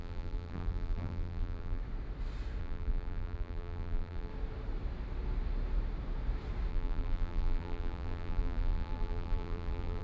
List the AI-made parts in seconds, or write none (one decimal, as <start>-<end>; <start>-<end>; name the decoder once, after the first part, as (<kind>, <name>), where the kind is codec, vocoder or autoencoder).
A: 0.0-1.8 (vocoder, BigVGAN v2); 2.6-4.3; 6.7-10.0